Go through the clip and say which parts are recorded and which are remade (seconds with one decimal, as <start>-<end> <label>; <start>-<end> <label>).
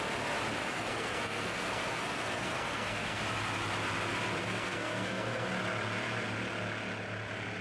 0.0-0.6 recorded; 0.6-3.2 remade; 3.2-4.4 recorded; 4.4-5.5 remade; 5.5-7.6 recorded